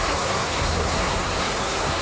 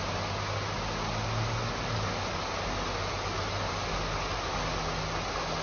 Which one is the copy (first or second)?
first